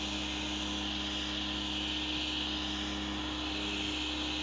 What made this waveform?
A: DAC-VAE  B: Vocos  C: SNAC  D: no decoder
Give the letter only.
D